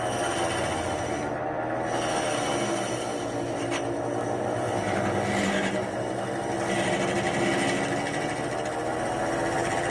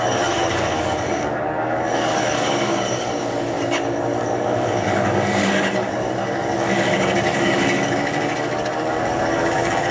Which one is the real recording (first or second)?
first